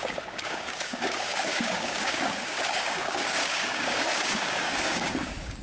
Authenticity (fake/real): fake